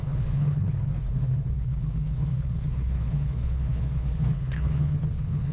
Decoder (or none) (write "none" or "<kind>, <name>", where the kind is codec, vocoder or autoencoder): codec, HILCodec